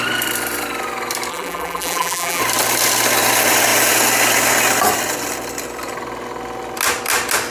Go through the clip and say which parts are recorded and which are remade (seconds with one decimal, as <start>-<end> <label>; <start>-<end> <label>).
0.0-1.3 recorded; 1.3-2.4 remade; 2.4-7.5 recorded